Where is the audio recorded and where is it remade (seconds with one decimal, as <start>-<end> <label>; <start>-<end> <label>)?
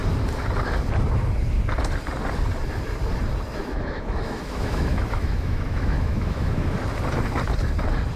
0.0-3.6 recorded; 3.6-6.7 remade; 6.7-8.2 recorded